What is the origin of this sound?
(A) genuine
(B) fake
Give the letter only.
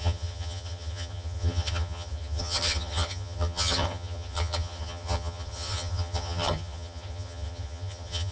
B